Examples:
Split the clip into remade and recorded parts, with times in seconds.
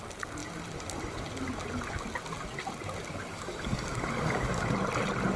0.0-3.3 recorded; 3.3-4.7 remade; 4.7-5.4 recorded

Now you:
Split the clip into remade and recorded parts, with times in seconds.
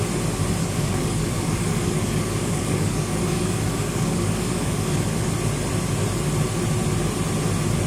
0.0-0.6 recorded; 0.6-5.3 remade; 5.3-7.9 recorded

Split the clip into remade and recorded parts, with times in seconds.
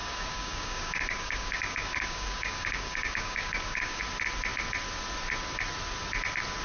0.0-4.0 remade; 4.0-6.6 recorded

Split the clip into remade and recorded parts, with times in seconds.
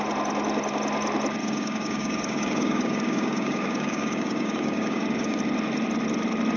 0.0-1.4 recorded; 1.4-5.4 remade; 5.4-6.6 recorded